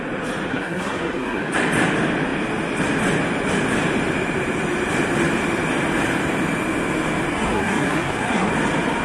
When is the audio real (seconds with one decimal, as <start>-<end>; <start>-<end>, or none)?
0.0-0.5; 1.5-7.3; 8.5-9.0